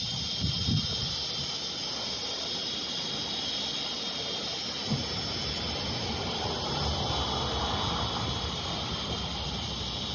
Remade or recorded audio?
recorded